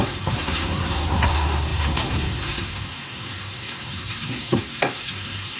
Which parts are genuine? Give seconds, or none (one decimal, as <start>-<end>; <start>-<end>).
none